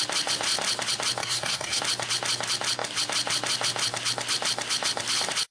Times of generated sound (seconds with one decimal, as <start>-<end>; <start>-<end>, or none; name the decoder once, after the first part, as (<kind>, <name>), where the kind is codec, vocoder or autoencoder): 1.2-1.8 (codec, SNAC)